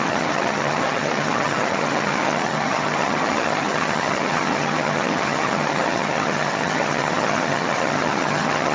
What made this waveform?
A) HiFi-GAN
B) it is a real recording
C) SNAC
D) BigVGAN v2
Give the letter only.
A